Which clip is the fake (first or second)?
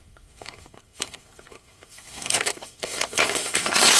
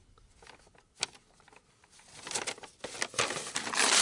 first